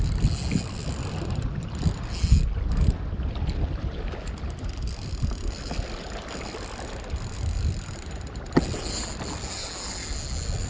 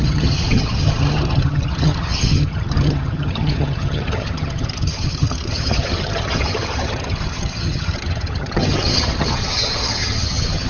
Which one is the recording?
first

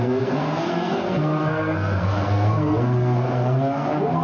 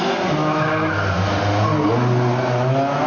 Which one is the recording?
second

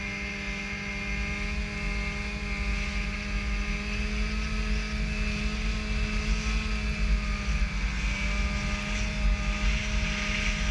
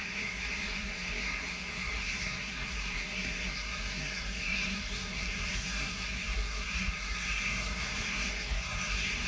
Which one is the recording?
first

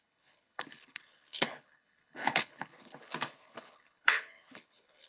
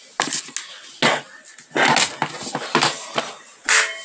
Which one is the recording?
second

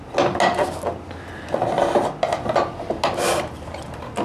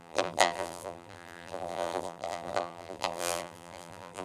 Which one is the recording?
first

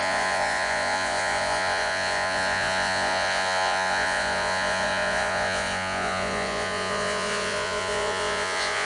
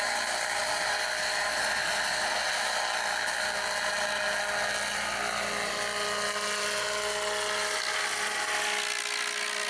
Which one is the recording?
second